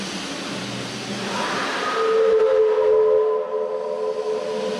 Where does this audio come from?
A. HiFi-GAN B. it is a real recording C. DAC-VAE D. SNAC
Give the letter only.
B